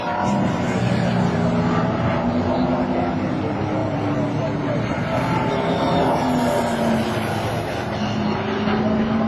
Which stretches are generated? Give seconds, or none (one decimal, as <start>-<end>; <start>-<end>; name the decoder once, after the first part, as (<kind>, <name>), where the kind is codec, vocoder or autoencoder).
none